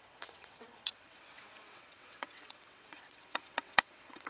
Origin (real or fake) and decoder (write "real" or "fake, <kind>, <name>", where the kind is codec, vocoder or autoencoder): fake, vocoder, WaveNeXt